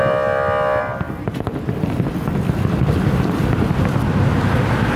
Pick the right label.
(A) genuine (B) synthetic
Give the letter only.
A